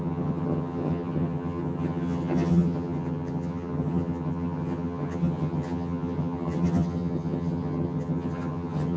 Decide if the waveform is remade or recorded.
remade